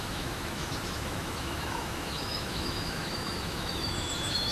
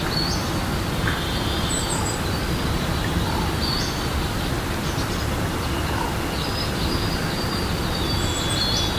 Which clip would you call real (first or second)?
second